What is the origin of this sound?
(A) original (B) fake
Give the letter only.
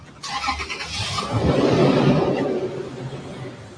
A